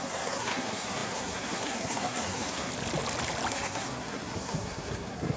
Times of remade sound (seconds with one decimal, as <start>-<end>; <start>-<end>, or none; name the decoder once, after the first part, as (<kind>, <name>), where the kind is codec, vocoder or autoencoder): 0.0-2.7 (codec, SNAC); 3.5-5.4